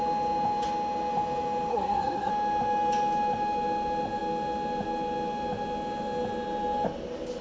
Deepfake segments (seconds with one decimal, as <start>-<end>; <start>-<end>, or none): 1.7-2.3